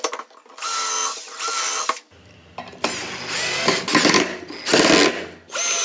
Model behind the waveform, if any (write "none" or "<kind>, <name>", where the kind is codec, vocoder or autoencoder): none